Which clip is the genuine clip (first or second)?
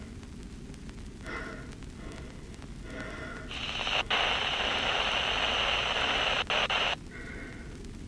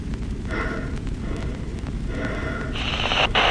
first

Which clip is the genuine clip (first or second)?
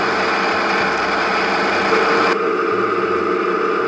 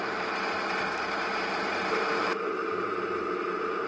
first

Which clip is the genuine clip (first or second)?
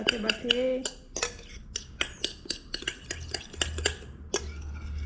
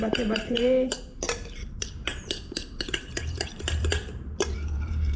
first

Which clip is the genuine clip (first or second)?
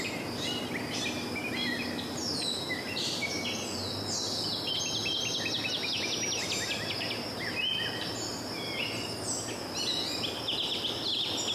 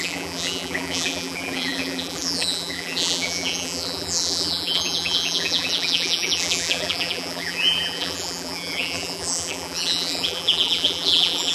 first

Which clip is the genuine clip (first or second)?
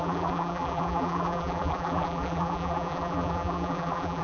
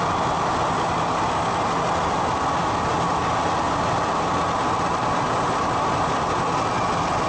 second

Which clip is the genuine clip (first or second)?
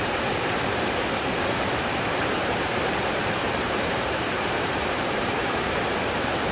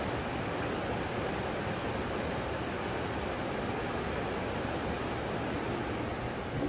second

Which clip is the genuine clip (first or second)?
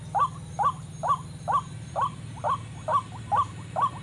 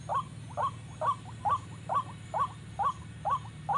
second